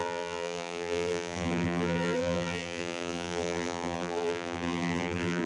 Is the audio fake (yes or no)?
yes